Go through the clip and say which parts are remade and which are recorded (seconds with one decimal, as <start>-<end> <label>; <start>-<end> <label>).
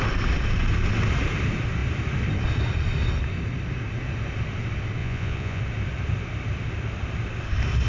0.0-5.0 recorded; 5.0-5.6 remade; 5.6-7.9 recorded